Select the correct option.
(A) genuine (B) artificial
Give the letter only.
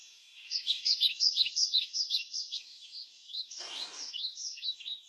B